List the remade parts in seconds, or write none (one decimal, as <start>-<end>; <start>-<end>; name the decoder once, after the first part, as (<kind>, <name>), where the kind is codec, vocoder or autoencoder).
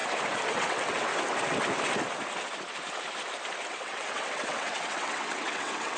0.5-1.1 (vocoder, WaveNeXt); 3.7-6.0